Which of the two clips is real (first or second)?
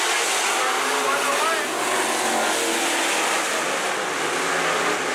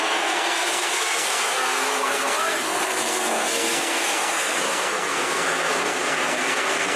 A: first